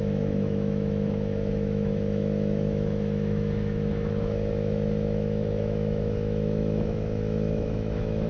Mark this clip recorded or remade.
remade